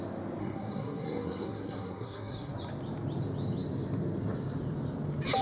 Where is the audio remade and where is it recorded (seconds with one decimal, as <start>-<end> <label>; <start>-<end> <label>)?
0.0-0.4 recorded; 0.4-2.5 remade; 2.5-5.4 recorded